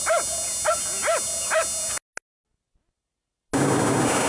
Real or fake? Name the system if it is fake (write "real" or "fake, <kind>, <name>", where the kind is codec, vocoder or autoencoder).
real